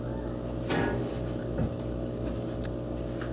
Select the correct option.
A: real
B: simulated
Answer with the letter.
A